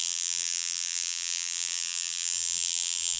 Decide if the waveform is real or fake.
fake